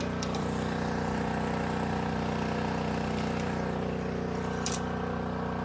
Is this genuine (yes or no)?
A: yes